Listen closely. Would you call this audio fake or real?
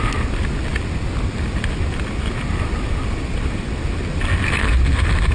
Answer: real